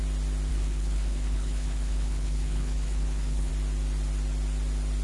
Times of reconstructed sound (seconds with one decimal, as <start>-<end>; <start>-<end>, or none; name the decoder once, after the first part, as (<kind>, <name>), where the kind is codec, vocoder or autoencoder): 0.5-3.5 (codec, HILCodec)